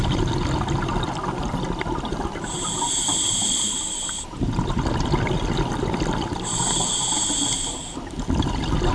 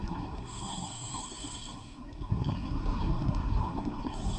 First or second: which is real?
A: first